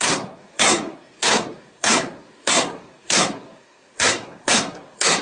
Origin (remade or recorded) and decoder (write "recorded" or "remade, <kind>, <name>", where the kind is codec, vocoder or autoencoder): remade, codec, SNAC